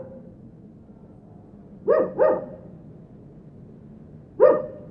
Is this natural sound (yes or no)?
yes